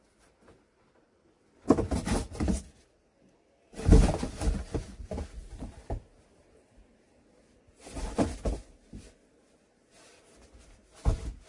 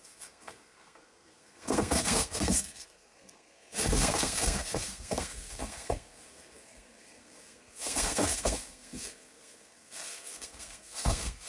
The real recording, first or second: first